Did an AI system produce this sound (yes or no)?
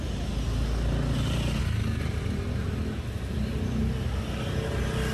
no